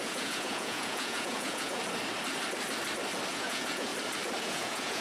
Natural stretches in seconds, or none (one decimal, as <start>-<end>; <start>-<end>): 1.8-3.3; 3.9-4.4

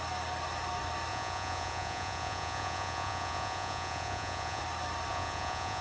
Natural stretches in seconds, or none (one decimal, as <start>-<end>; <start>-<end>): 0.0-1.1; 4.6-5.1

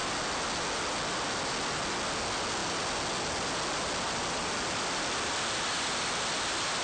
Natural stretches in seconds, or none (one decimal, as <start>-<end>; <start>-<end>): 0.0-6.8

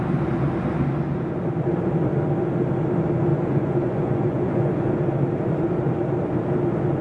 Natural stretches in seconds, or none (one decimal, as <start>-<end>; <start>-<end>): 0.0-3.3; 4.9-7.0